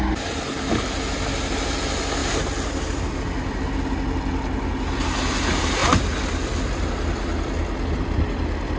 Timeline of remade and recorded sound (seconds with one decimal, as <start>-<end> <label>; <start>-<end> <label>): 0.0-2.2 recorded; 2.2-3.2 remade; 3.2-8.8 recorded